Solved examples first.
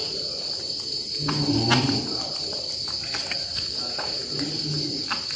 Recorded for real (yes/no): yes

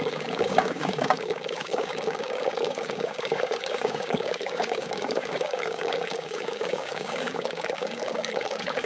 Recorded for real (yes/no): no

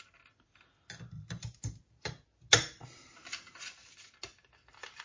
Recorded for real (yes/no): yes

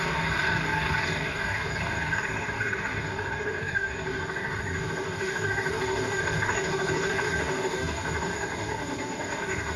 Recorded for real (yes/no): no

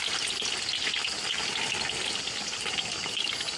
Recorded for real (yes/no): yes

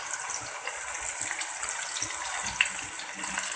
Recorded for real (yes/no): yes